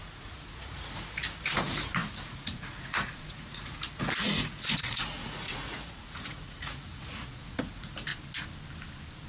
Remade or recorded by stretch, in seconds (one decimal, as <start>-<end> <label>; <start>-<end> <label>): 0.0-8.1 remade; 8.1-9.3 recorded